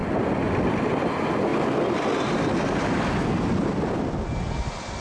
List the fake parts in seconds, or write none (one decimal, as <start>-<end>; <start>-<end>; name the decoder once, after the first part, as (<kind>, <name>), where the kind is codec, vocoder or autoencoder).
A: 0.0-0.7 (vocoder, BigVGAN v2); 1.5-4.5